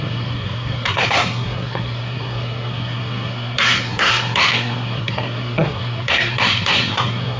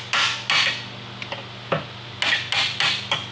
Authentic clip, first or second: second